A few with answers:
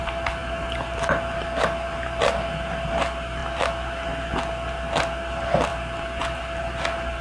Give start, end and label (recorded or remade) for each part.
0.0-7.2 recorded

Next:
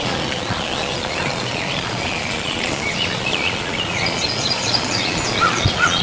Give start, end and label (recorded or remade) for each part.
0.0-6.0 remade